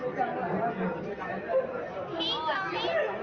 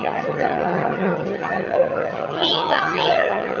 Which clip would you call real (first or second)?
first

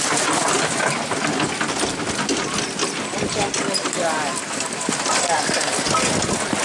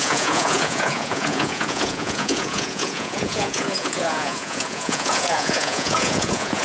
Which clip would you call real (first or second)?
first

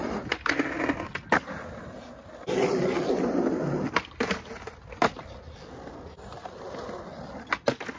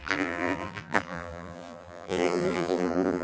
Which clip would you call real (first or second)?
first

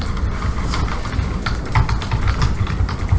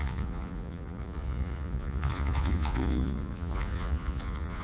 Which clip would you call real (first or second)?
first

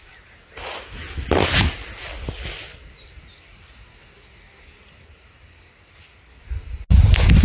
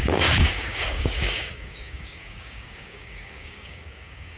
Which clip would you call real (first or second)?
first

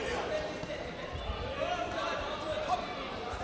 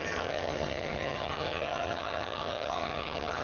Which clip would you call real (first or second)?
first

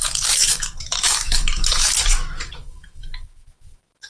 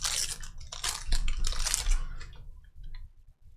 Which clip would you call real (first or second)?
second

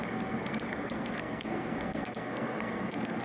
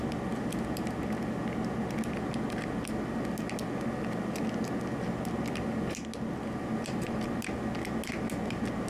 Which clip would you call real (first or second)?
second